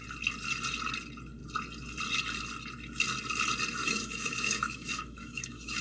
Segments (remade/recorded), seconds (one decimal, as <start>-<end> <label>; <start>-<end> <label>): 0.0-3.8 recorded; 3.8-5.8 remade